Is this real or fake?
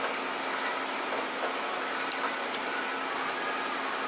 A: real